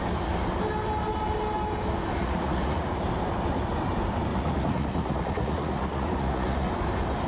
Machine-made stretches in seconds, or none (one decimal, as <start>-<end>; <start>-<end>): 2.2-3.0; 4.3-6.7